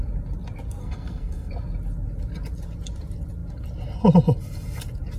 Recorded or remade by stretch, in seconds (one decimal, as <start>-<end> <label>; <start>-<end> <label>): 0.0-0.8 recorded; 0.8-1.5 remade; 1.5-5.2 recorded